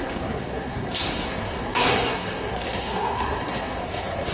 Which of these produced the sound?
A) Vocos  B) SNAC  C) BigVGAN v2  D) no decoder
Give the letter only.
B